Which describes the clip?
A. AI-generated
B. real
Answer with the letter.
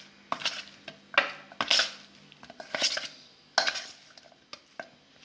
B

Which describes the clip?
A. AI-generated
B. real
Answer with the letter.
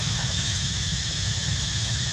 A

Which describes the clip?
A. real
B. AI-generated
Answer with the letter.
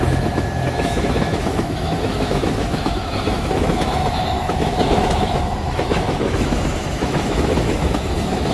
B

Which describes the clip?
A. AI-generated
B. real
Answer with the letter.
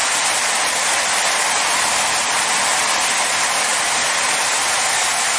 B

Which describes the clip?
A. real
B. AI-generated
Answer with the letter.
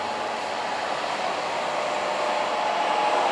A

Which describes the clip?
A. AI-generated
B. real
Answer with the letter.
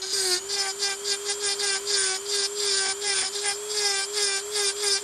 B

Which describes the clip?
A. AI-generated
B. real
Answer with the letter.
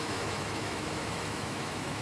A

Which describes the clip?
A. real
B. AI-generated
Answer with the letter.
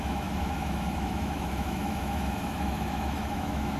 B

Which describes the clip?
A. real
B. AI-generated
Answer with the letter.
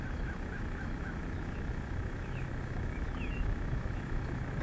B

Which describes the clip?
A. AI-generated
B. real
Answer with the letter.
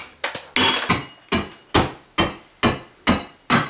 B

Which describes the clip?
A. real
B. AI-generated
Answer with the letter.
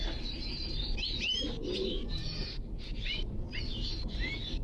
A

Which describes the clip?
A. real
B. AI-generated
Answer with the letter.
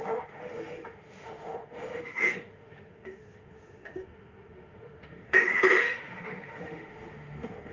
B